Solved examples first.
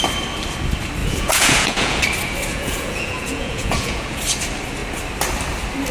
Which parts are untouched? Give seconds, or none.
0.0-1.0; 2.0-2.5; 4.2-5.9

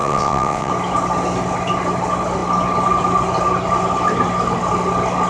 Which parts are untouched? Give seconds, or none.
0.7-5.3

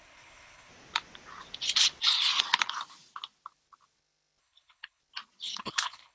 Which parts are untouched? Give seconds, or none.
0.7-4.4; 5.0-5.6

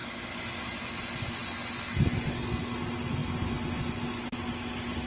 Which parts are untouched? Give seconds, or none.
0.0-5.1

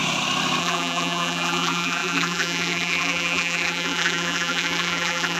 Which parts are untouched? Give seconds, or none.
0.0-0.6

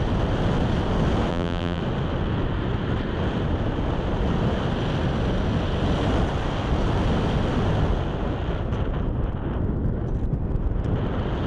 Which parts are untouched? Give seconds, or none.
0.0-1.3; 1.8-11.5